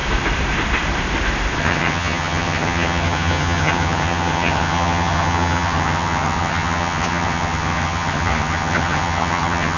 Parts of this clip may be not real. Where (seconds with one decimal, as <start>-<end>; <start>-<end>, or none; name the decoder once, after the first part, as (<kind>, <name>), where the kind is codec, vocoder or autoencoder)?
1.6-9.8 (vocoder, HiFi-GAN)